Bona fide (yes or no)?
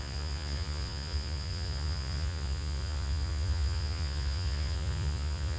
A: no